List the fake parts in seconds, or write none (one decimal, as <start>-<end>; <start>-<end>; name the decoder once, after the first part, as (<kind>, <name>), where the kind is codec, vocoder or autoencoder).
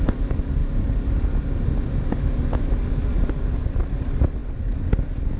none